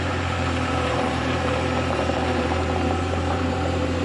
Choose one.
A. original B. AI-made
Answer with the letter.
B